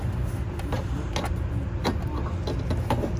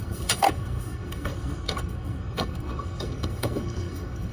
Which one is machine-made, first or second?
second